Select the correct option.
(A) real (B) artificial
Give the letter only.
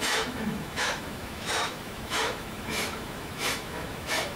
B